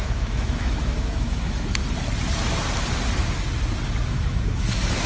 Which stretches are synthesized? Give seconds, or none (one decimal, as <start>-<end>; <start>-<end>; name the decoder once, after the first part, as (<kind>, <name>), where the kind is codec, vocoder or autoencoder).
0.0-1.8 (autoencoder, DAC-VAE); 4.1-5.1